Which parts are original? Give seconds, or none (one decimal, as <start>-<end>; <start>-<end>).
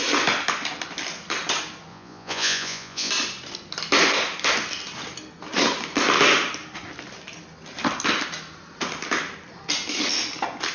0.0-1.9; 3.1-10.7